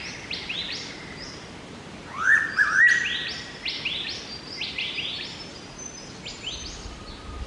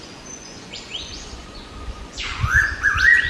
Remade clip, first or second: second